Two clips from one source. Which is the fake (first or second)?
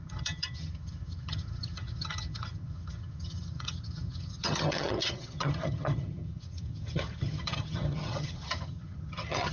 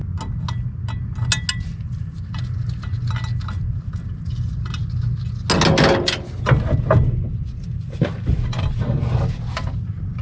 first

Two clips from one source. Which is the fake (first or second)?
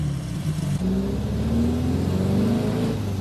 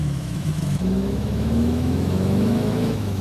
second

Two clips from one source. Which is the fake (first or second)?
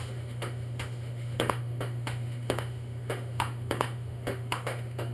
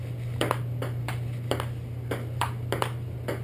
first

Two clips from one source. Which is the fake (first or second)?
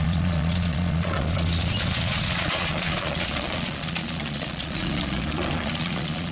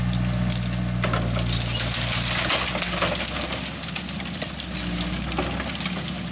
first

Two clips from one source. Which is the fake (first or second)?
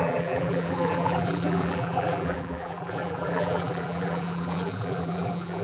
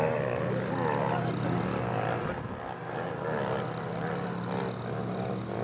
first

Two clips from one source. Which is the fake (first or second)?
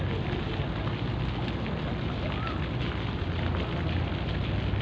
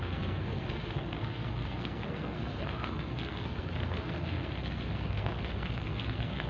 second